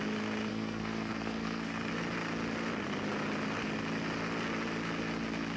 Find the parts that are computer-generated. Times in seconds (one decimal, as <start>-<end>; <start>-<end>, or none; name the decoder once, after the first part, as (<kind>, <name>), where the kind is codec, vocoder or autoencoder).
0.5-1.9 (codec, SNAC)